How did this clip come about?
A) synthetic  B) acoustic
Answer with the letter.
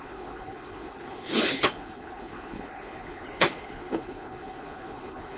A